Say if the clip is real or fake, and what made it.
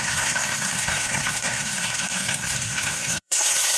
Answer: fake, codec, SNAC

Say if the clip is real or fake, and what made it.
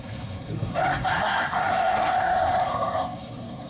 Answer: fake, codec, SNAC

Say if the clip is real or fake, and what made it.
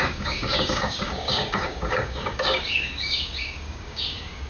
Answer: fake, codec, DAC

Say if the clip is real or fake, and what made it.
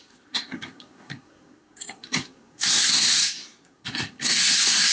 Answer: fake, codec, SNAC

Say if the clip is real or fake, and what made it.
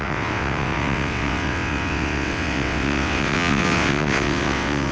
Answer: fake, vocoder, WaveNeXt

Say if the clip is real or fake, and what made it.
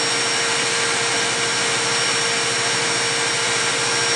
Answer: real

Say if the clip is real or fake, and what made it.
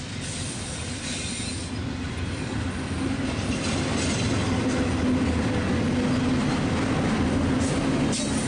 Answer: real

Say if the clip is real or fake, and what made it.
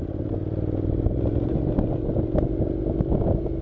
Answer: real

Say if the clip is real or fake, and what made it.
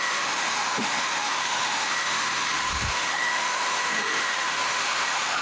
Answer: fake, autoencoder, DAC-VAE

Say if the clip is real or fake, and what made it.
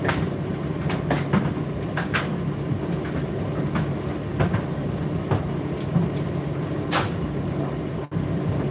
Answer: real